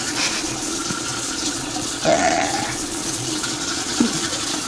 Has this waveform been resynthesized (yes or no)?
yes